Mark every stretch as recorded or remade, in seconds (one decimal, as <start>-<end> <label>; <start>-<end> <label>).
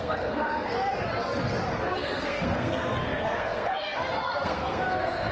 0.0-0.9 remade; 0.9-1.7 recorded; 1.7-5.3 remade